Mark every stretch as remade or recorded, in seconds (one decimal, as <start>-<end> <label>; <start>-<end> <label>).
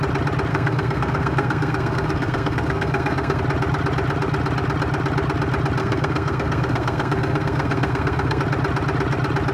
0.0-0.5 recorded; 0.5-3.4 remade; 3.4-5.8 recorded; 5.8-8.4 remade; 8.4-9.5 recorded